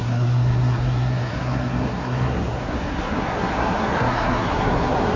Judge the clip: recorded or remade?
remade